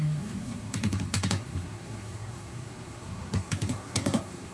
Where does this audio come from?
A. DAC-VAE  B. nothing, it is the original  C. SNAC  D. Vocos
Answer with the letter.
C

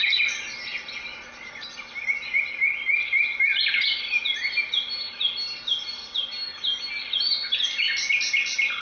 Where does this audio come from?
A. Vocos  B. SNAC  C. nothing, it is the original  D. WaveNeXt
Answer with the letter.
C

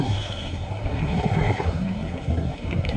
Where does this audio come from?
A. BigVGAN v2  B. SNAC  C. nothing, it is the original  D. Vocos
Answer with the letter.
B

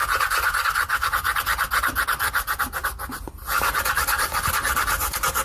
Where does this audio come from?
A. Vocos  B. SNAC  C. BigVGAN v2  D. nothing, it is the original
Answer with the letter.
D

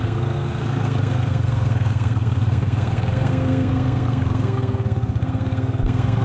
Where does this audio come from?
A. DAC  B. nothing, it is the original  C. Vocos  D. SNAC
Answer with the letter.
D